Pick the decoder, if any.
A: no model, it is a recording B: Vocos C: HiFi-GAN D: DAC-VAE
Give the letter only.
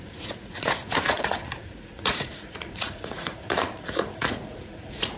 B